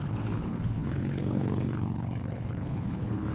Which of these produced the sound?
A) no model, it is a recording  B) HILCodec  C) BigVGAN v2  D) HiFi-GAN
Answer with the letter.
B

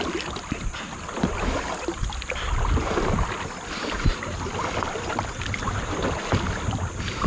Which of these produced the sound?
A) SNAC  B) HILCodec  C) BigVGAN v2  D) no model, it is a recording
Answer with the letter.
D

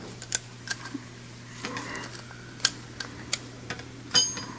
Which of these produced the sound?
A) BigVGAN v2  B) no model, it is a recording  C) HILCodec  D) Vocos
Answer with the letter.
B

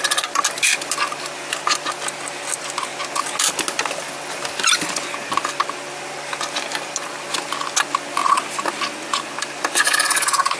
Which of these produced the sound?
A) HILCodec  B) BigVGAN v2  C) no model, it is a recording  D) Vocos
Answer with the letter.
C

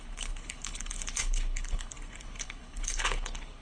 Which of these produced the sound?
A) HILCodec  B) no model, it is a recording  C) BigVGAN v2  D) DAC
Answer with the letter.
A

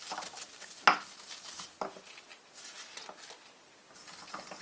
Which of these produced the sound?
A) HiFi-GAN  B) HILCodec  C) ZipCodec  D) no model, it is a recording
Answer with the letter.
D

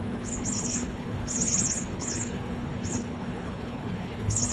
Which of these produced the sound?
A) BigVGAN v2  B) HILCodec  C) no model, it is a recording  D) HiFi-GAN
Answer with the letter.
B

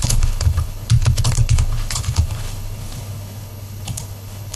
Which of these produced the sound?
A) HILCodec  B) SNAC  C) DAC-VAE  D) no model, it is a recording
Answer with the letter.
A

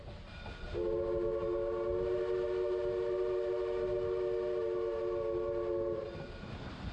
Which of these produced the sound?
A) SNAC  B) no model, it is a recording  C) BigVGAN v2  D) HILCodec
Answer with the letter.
B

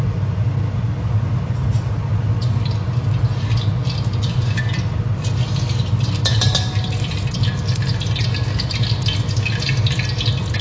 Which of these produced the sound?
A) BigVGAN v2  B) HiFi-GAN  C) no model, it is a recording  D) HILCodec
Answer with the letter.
C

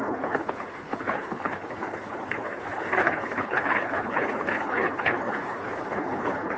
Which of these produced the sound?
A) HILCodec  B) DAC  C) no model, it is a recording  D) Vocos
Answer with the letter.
A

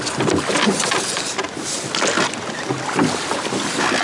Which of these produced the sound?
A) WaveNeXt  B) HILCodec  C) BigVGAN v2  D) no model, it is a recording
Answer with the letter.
D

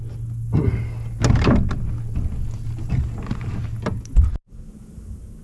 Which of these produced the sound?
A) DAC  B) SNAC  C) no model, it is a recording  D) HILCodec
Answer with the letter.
C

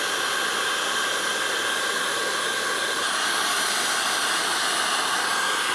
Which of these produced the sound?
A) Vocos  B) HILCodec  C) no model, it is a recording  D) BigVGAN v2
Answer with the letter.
C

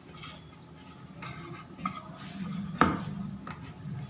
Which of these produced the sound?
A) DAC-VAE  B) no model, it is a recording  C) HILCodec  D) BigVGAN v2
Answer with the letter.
B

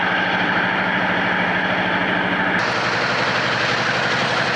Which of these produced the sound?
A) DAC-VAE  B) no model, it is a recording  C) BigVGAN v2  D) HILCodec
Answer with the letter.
B